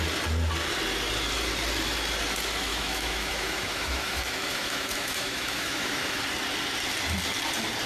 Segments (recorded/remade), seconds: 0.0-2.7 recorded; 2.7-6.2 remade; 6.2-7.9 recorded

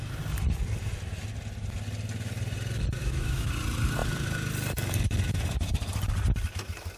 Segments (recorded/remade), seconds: 0.0-3.0 recorded; 3.0-3.5 remade; 3.5-7.0 recorded